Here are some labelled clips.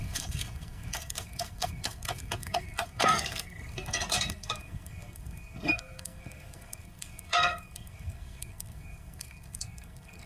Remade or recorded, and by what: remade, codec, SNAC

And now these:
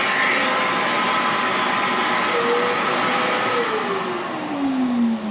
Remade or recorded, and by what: recorded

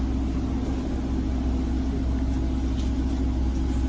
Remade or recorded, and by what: recorded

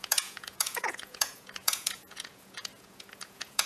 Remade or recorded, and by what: remade, vocoder, Vocos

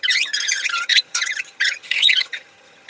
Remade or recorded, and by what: remade, vocoder, HiFi-GAN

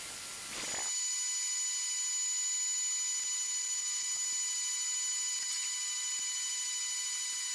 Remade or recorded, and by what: recorded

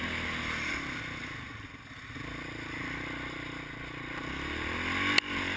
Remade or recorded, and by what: recorded